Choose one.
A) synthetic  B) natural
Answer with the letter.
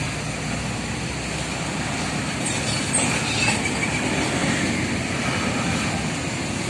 B